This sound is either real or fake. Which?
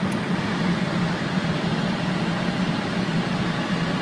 real